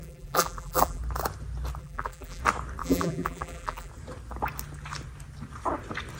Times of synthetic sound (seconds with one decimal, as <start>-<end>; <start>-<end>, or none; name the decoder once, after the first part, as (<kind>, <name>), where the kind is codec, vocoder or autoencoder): 0.0-1.0 (vocoder, BigVGAN v2); 1.8-2.4; 2.8-3.9